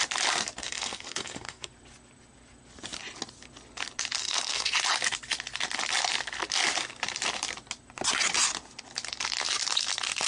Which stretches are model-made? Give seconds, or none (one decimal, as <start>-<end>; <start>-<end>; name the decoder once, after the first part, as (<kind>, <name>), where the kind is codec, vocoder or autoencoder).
0.6-1.7 (codec, SNAC); 4.2-4.8